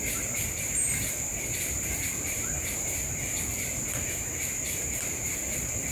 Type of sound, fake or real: fake